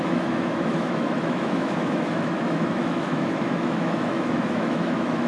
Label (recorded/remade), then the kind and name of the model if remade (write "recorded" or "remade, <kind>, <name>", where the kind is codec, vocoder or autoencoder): remade, autoencoder, DAC-VAE